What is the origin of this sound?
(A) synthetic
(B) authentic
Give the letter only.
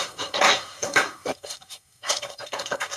A